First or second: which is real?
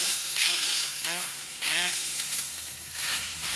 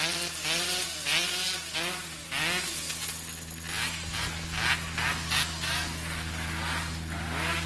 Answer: second